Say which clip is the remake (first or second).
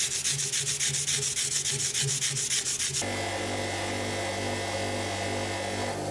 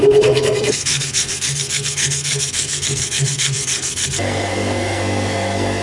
second